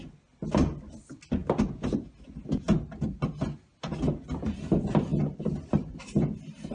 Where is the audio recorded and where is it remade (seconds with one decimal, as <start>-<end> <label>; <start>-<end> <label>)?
0.0-6.7 recorded